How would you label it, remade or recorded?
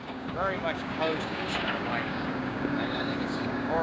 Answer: remade